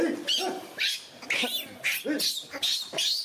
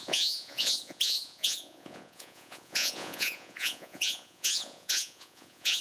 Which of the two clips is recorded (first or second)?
first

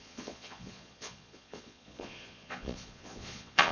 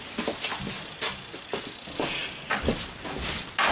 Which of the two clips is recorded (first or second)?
second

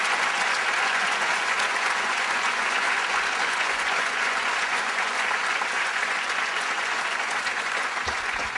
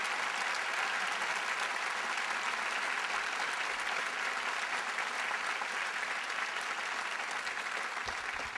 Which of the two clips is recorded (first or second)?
second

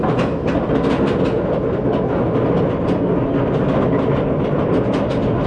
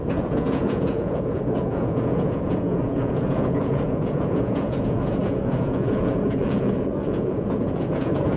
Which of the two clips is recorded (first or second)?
first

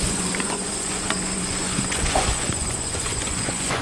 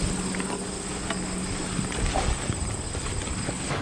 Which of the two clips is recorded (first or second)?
second